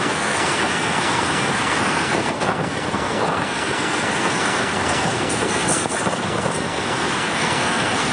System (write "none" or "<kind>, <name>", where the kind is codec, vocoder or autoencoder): codec, SNAC